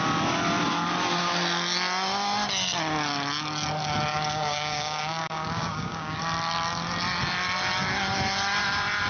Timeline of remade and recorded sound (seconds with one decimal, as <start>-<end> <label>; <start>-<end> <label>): 0.0-4.1 recorded; 4.1-6.2 remade; 6.2-9.1 recorded